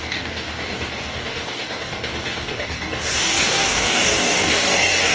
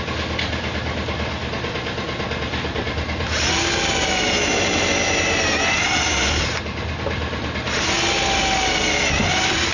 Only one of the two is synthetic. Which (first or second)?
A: first